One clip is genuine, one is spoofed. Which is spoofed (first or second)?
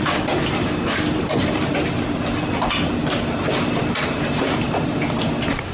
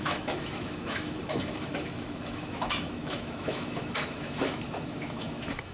second